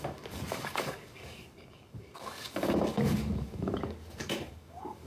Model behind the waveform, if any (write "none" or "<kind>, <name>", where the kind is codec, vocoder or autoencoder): codec, DAC